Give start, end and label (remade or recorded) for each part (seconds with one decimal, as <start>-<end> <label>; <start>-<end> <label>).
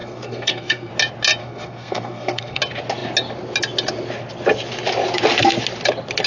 0.0-0.9 remade; 0.9-1.4 recorded; 1.4-2.6 remade; 2.6-6.3 recorded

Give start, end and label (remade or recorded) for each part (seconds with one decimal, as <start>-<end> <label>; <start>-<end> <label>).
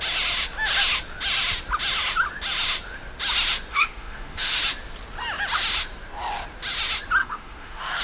0.0-3.7 recorded; 3.7-4.6 remade; 4.6-7.2 recorded; 7.2-8.0 remade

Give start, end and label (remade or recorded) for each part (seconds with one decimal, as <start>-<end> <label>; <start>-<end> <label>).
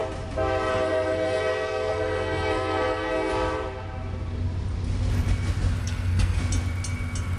0.0-0.7 recorded; 0.7-3.3 remade; 3.3-5.8 recorded; 5.8-6.4 remade; 6.4-7.4 recorded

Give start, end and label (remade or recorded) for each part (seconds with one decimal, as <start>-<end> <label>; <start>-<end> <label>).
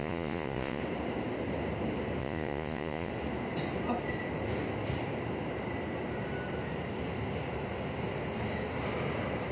0.0-0.8 remade; 0.8-2.2 recorded; 2.2-3.1 remade; 3.1-9.5 recorded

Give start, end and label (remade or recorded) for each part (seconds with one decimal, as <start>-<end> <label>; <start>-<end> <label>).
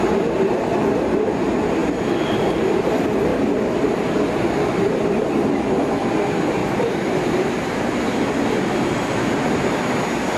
0.0-10.4 recorded